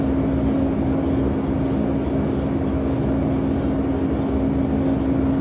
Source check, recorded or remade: recorded